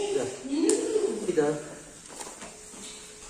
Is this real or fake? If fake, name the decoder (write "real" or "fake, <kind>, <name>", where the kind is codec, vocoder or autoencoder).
real